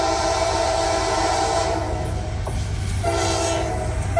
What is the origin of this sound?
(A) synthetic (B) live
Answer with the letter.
B